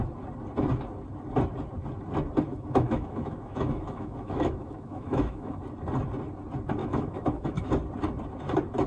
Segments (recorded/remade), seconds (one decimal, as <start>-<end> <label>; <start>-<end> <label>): 0.0-2.5 recorded; 2.5-5.6 remade; 5.6-6.8 recorded; 6.8-7.7 remade; 7.7-8.9 recorded